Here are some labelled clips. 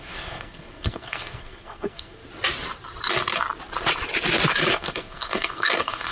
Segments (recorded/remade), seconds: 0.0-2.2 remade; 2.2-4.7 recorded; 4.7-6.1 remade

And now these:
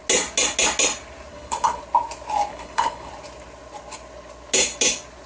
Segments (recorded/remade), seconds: 0.0-1.3 recorded; 1.3-1.8 remade; 1.8-2.5 recorded; 2.5-3.1 remade; 3.1-5.3 recorded

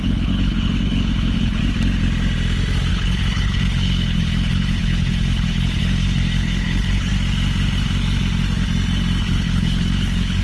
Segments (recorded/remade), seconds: 0.0-1.6 remade; 1.6-2.9 recorded; 2.9-7.1 remade; 7.1-9.2 recorded; 9.2-10.4 remade

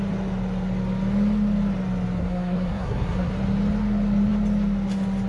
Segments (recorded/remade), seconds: 0.0-2.2 recorded; 2.2-3.3 remade; 3.3-5.3 recorded

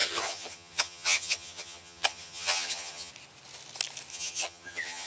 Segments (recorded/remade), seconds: 0.0-3.1 remade; 3.1-4.1 recorded; 4.1-5.1 remade

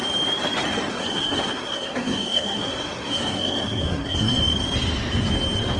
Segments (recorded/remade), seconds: 0.0-0.9 recorded; 0.9-4.4 remade; 4.4-5.8 recorded

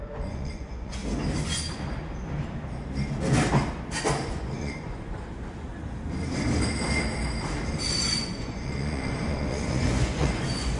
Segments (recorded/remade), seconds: 0.0-1.0 remade; 1.0-4.3 recorded; 4.3-5.7 remade; 5.7-8.1 recorded; 8.1-10.8 remade

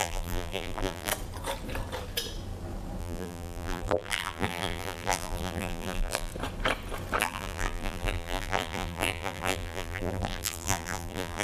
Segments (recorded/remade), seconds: 0.0-1.1 remade; 1.1-3.0 recorded; 3.0-6.3 remade; 6.3-7.2 recorded; 7.2-11.4 remade